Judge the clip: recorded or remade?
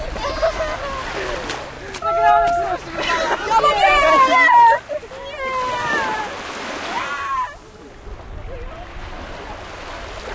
recorded